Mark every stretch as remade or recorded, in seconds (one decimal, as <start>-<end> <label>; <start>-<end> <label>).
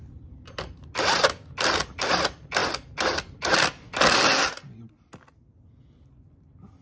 0.0-6.8 recorded